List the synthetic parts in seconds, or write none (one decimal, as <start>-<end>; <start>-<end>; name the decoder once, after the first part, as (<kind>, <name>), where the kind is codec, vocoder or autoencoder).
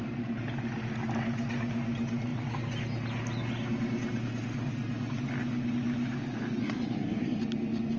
6.6-7.4 (codec, SNAC)